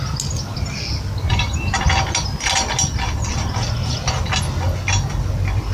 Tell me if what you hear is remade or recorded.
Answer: recorded